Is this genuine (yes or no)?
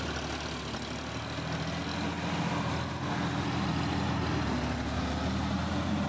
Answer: yes